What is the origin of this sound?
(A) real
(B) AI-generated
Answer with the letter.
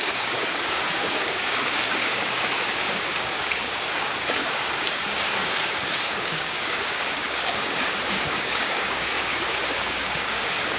B